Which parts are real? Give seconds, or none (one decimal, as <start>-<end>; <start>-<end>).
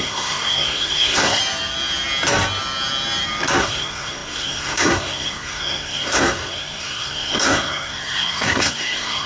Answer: 1.4-3.6